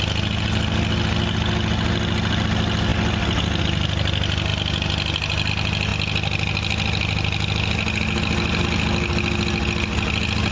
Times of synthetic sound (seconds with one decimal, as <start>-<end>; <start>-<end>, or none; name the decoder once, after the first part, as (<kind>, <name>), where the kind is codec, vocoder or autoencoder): none